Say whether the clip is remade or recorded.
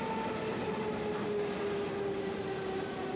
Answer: recorded